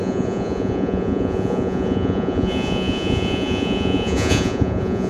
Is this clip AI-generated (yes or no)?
yes